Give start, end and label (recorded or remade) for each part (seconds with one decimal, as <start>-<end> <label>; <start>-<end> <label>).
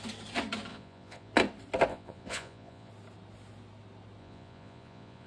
0.0-0.7 recorded; 0.7-1.3 remade; 1.3-1.9 recorded; 1.9-2.9 remade; 2.9-4.2 recorded; 4.2-5.3 remade